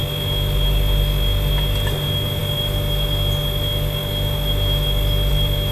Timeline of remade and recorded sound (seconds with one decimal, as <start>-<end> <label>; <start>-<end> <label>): 0.0-5.7 recorded